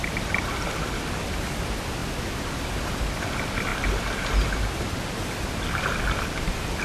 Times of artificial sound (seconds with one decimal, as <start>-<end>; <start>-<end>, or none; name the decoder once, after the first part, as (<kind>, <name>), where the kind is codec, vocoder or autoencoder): none